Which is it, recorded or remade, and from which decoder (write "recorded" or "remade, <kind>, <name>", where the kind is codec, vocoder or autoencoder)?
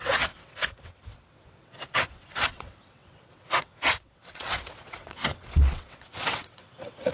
remade, vocoder, WaveNeXt